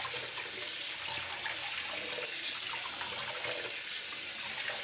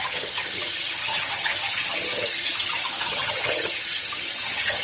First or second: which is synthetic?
second